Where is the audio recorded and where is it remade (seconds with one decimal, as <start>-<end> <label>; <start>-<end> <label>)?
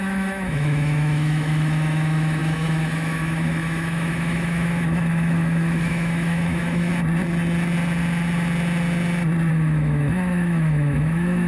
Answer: 0.0-6.9 remade; 6.9-9.5 recorded; 9.5-11.5 remade